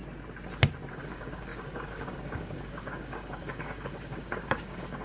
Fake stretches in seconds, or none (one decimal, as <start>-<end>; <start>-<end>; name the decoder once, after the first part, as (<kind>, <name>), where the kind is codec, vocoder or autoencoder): 0.9-5.0 (codec, DAC)

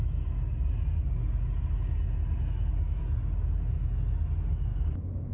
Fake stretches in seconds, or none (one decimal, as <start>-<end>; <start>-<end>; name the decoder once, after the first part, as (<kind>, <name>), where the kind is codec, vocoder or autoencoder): 4.7-5.3 (codec, DAC)